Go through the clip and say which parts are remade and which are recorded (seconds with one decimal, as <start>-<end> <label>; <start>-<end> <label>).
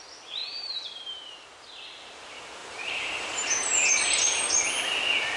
0.0-0.4 recorded; 0.4-1.3 remade; 1.3-2.6 recorded; 2.6-4.4 remade; 4.4-5.4 recorded